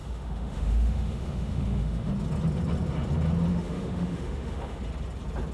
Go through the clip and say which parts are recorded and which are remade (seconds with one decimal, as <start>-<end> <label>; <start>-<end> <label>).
0.0-2.1 remade; 2.1-3.5 recorded; 3.5-4.8 remade; 4.8-5.5 recorded